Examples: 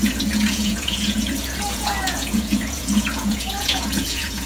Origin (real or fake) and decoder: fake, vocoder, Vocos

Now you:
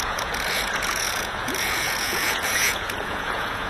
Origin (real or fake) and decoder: fake, vocoder, Vocos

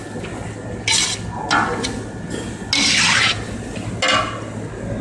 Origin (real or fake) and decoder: real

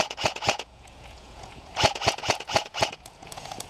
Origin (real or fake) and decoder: fake, vocoder, Vocos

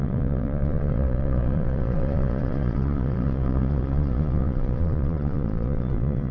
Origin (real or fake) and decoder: fake, vocoder, Vocos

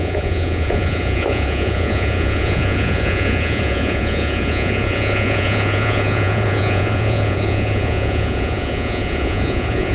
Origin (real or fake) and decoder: fake, vocoder, Vocos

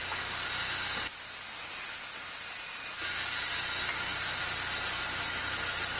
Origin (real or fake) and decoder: real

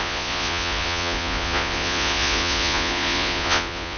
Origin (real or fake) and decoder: fake, vocoder, Vocos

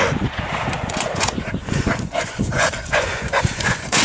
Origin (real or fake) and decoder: fake, vocoder, Vocos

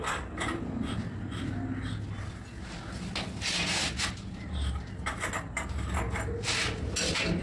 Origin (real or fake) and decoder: real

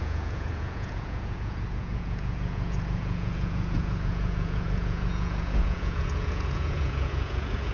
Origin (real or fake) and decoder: fake, vocoder, Vocos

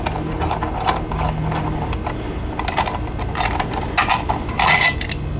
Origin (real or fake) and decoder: real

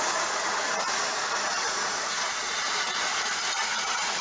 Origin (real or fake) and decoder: fake, vocoder, Vocos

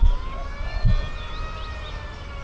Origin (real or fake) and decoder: real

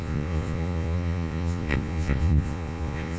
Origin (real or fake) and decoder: fake, vocoder, Vocos